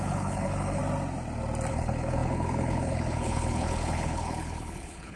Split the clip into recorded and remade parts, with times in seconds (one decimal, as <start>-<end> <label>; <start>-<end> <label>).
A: 0.0-0.8 remade; 0.8-1.7 recorded; 1.7-5.2 remade

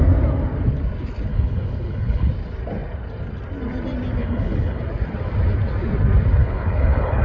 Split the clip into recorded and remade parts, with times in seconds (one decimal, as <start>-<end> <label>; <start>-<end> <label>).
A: 0.0-1.3 recorded; 1.3-2.3 remade; 2.3-4.2 recorded; 4.2-4.8 remade; 4.8-6.4 recorded; 6.4-7.2 remade